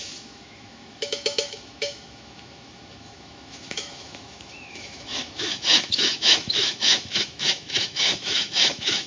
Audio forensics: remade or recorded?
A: remade